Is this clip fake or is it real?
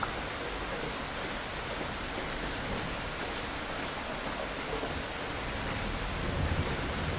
fake